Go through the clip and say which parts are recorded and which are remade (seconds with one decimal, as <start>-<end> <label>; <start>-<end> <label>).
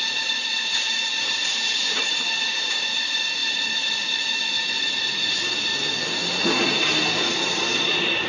0.0-5.7 remade; 5.7-7.3 recorded; 7.3-8.3 remade